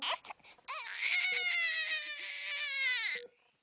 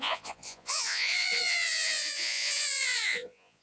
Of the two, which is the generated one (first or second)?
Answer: second